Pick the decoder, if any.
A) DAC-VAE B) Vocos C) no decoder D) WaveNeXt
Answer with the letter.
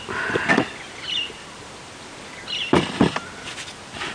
C